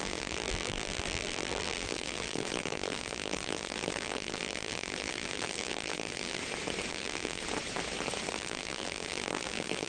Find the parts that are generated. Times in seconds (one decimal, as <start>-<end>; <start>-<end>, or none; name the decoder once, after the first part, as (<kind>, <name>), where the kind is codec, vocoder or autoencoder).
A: 0.0-6.4 (vocoder, BigVGAN v2); 6.9-7.4; 8.3-9.9